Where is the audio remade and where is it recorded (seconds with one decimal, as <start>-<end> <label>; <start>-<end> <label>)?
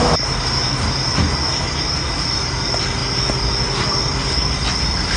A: 0.0-5.2 recorded